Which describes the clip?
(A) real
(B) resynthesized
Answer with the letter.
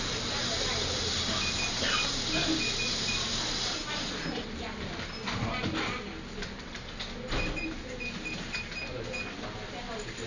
A